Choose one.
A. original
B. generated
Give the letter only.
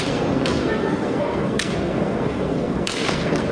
B